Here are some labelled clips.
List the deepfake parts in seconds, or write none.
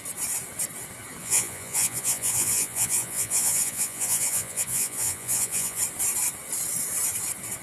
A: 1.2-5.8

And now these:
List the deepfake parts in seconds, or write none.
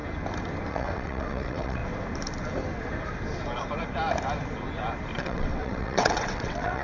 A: 0.7-1.8; 5.2-6.8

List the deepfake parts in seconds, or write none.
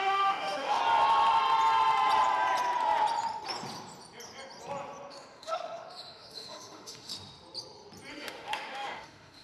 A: 0.0-0.8; 5.1-7.1; 8.1-9.4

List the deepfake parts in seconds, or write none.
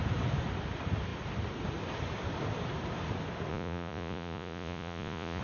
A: 3.5-5.4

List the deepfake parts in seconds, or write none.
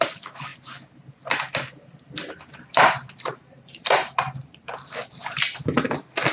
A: 0.0-0.5; 2.7-5.0